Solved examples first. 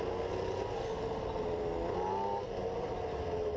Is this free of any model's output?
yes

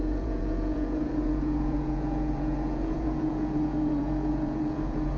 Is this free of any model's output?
no